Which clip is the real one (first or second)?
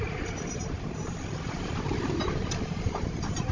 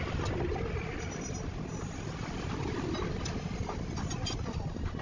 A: second